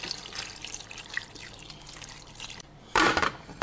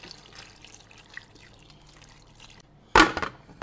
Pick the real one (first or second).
second